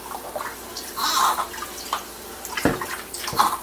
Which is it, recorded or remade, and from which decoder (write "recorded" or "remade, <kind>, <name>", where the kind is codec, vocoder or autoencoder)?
remade, vocoder, BigVGAN v2